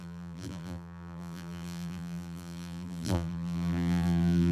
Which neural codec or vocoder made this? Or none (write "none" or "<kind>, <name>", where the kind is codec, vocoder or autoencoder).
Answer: vocoder, BigVGAN v2